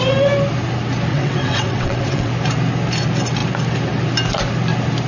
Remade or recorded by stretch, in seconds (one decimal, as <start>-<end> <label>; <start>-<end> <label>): 0.0-1.1 recorded; 1.1-2.3 remade; 2.3-5.1 recorded